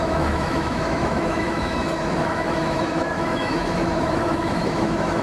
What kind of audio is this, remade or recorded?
remade